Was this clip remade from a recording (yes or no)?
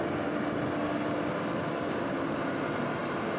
no